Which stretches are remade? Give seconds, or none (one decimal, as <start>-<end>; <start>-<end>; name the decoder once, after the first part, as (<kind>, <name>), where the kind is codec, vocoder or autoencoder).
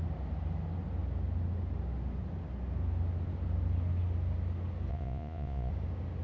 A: 4.9-5.7 (vocoder, Vocos)